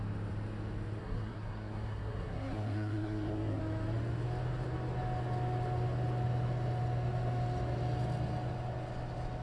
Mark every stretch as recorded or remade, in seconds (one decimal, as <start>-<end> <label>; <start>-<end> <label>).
0.0-1.0 recorded; 1.0-3.6 remade; 3.6-9.4 recorded